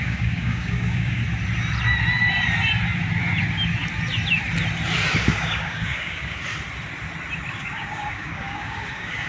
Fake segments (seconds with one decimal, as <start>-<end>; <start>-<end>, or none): 0.0-1.2; 5.2-6.4; 7.6-9.3